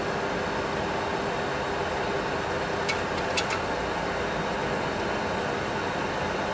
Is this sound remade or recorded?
recorded